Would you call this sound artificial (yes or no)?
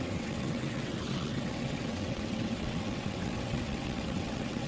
yes